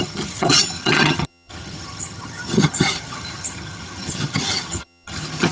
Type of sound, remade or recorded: remade